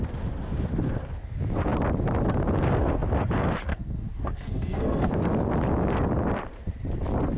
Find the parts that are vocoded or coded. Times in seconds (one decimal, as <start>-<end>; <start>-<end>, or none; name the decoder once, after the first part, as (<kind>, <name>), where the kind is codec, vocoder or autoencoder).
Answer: 3.7-5.1 (codec, SNAC)